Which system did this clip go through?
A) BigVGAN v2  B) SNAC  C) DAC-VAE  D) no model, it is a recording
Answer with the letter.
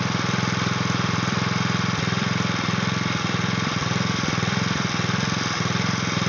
A